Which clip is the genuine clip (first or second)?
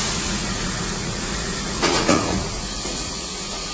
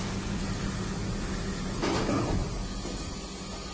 second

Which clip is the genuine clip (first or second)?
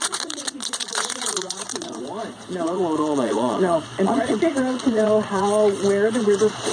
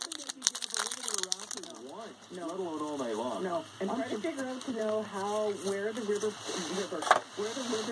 second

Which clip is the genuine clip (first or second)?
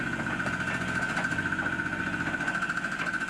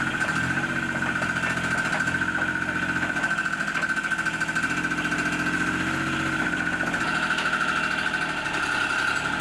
second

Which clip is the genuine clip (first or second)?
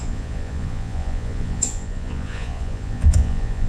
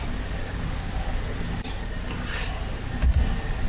second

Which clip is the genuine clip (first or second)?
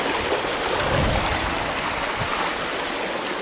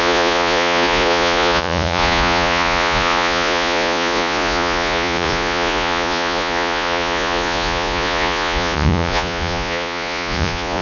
first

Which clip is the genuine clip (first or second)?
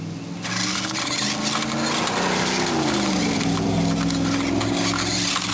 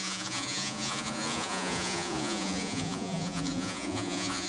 first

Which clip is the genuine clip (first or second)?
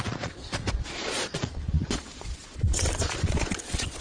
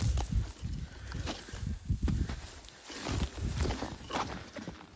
second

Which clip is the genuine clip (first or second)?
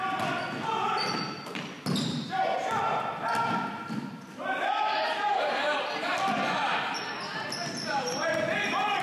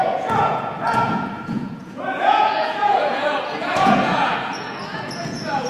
first